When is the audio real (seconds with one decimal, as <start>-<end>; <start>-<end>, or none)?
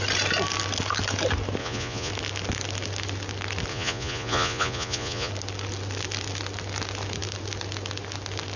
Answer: 0.0-1.6; 2.1-3.7; 5.3-8.6